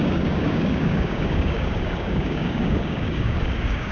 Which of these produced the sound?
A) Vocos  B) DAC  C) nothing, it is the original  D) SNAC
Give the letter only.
B